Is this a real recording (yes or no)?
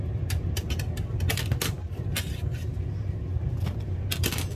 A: yes